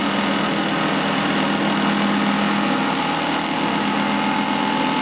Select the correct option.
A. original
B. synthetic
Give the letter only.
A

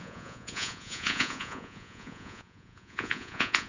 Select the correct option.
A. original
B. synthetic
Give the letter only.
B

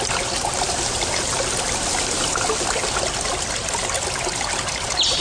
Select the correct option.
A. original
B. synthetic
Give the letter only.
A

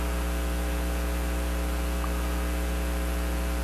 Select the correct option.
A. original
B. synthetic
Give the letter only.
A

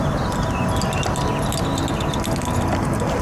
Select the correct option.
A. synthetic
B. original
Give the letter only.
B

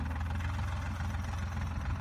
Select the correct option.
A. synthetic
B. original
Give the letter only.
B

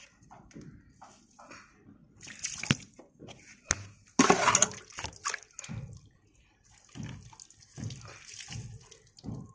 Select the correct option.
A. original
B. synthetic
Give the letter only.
A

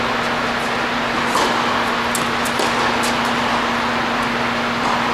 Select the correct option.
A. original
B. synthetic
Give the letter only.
A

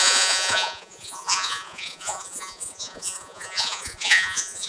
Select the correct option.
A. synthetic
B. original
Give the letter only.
A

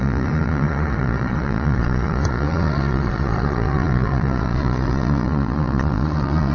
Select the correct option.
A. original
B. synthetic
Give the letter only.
B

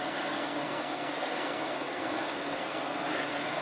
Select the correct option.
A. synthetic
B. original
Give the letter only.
A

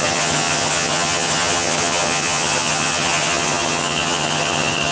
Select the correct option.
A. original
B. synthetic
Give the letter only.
B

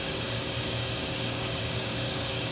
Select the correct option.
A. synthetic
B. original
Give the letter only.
A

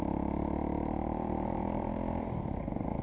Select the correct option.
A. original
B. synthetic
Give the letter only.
B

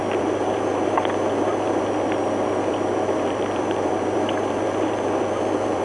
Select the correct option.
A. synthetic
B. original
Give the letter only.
A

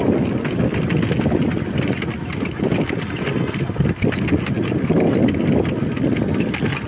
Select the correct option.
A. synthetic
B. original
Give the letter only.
B